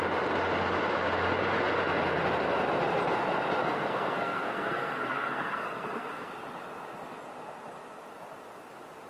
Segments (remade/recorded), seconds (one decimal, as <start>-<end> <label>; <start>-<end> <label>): 0.0-3.6 recorded; 3.6-6.3 remade; 6.3-9.1 recorded